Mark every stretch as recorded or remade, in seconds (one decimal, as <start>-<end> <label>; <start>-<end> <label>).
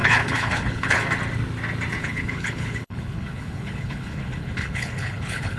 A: 0.0-1.0 remade; 1.0-2.0 recorded; 2.0-5.6 remade